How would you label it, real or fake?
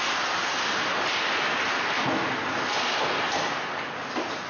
real